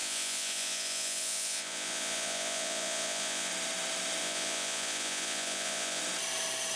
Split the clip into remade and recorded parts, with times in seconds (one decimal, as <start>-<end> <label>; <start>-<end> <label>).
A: 0.0-3.5 remade; 3.5-4.2 recorded; 4.2-6.0 remade; 6.0-6.8 recorded